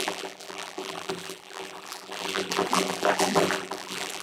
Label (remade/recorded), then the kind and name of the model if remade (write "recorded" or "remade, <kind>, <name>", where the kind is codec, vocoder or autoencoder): remade, vocoder, BigVGAN v2